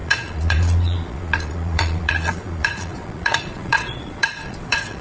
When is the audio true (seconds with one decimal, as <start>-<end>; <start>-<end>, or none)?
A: none